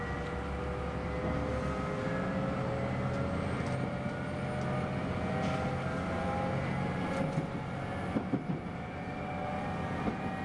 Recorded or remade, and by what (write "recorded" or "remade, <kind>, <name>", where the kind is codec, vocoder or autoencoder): recorded